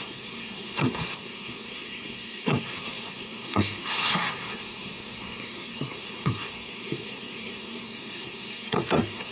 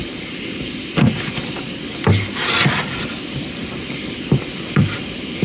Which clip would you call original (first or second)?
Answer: second